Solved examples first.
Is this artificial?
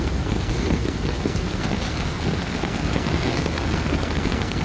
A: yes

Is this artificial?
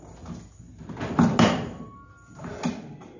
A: no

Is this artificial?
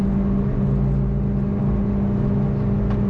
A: no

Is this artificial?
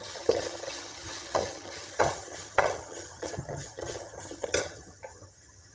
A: yes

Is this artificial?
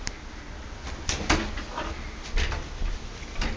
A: no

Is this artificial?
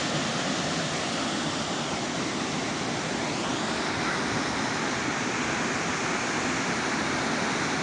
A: no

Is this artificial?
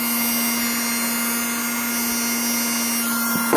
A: no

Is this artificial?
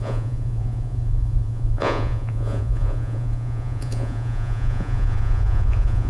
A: yes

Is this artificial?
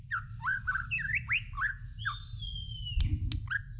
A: no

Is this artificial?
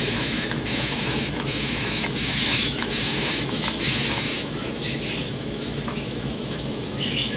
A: yes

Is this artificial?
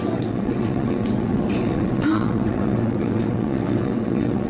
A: yes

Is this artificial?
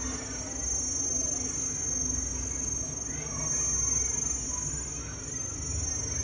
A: no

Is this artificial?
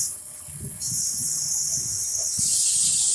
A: yes